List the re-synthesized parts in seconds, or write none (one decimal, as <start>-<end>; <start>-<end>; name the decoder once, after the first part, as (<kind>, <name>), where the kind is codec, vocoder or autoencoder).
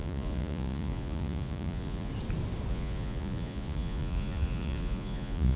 0.0-2.1 (vocoder, Vocos); 2.7-5.6